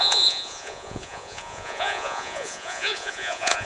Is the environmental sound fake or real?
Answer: fake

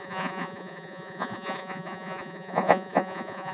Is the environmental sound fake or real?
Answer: fake